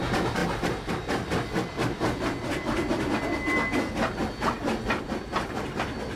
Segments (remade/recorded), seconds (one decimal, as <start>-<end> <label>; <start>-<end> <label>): 0.0-6.2 recorded